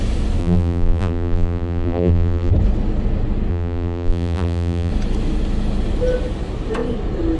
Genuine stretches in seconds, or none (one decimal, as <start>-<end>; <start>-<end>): 0.0-0.4; 2.5-3.5; 4.9-7.4